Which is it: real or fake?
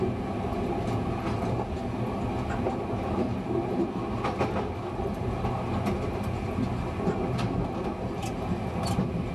real